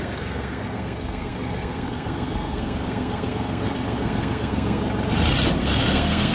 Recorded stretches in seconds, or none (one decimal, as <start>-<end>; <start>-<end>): 4.8-5.6